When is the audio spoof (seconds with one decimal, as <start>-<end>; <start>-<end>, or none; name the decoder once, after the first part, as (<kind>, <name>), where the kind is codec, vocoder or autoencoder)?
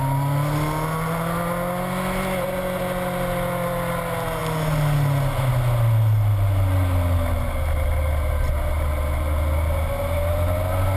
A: none